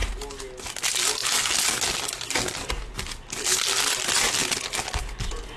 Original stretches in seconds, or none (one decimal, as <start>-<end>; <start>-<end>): 0.0-5.6